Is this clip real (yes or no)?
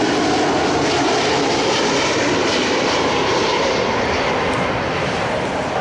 no